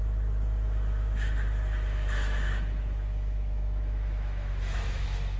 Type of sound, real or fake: fake